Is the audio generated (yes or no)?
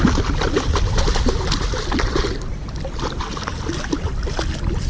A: no